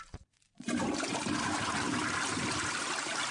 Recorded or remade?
recorded